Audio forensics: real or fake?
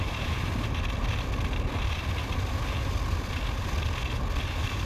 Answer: real